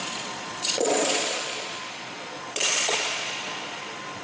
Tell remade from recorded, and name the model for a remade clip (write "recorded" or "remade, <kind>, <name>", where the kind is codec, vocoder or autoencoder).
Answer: remade, vocoder, Vocos